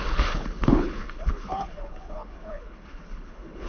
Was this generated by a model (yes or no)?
yes